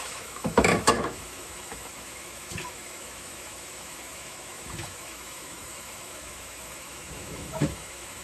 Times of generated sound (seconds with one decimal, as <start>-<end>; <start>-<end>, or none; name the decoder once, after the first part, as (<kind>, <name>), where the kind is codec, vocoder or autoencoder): 0.0-8.2 (autoencoder, DAC-VAE)